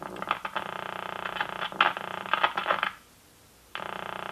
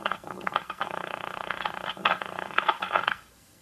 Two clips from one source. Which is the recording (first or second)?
first